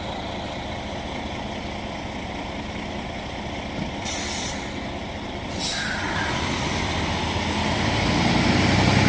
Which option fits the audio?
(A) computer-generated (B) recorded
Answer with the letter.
B